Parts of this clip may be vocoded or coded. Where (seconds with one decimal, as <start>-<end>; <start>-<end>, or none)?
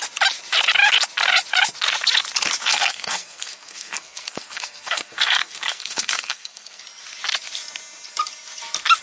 2.6-6.8